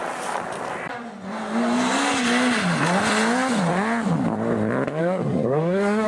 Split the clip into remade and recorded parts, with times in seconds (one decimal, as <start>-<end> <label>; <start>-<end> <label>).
0.0-5.0 recorded; 5.0-6.1 remade